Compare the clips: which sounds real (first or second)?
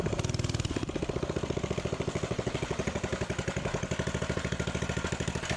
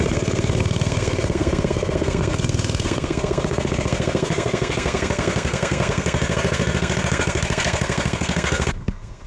first